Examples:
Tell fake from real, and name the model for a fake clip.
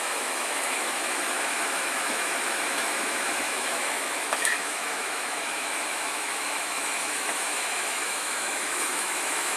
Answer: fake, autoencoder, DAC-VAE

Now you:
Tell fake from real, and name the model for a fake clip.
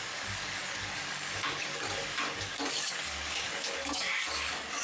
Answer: fake, codec, DAC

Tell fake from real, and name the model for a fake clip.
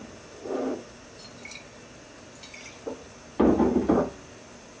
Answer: real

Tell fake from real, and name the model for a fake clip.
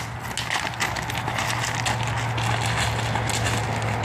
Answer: real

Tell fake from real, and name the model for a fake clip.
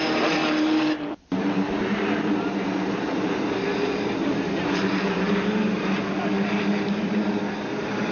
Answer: fake, vocoder, BigVGAN v2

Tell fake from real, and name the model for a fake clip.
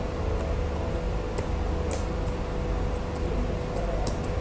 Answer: real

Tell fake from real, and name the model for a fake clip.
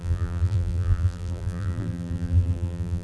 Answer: fake, vocoder, BigVGAN v2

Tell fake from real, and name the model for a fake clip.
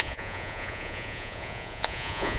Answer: fake, vocoder, Vocos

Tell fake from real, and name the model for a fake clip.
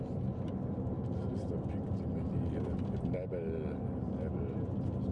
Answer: real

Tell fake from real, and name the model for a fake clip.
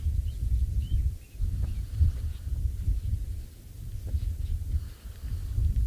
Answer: real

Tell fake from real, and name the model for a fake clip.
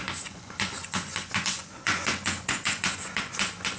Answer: fake, vocoder, Vocos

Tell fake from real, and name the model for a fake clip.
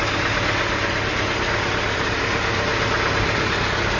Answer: real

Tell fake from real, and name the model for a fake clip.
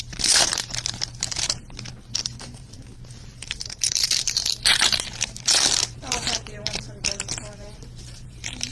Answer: fake, vocoder, BigVGAN v2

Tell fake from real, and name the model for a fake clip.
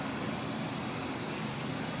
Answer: real